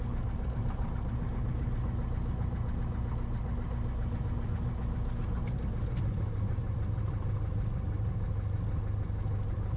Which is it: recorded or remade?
recorded